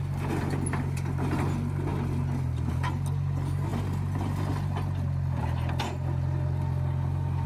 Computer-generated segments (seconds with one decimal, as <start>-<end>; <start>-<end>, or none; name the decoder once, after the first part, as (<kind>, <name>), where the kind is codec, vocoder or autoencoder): none